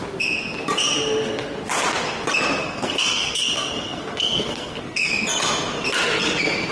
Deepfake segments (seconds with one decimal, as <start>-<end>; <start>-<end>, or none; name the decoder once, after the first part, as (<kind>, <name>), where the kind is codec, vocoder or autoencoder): 2.6-5.1 (codec, SNAC)